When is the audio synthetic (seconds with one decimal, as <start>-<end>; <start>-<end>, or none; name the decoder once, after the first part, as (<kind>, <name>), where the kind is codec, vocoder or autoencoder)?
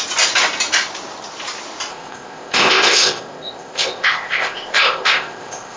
1.9-5.8 (codec, ZipCodec)